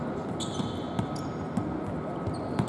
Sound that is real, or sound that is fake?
real